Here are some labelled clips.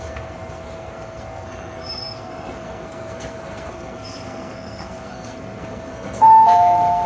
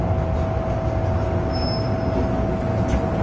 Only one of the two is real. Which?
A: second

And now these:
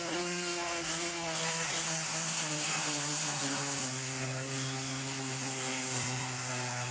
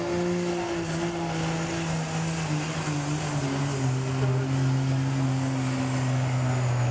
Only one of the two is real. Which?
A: second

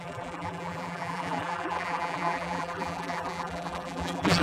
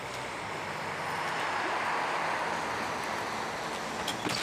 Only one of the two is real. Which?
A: second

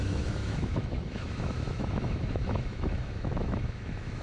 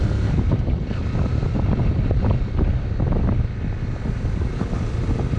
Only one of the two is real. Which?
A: second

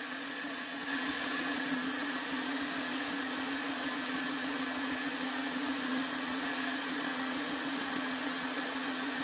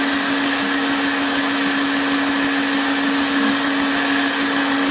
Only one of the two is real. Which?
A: second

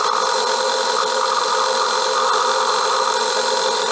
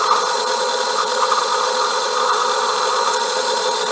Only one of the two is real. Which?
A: first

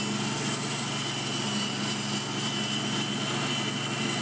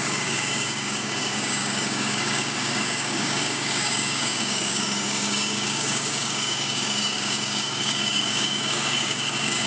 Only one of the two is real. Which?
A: first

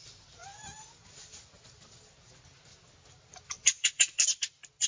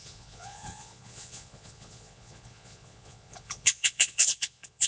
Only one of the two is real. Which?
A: first